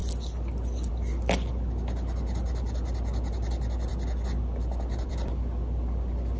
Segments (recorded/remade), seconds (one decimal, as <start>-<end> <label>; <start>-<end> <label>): 0.0-6.4 recorded